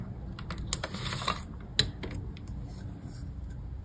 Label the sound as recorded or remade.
recorded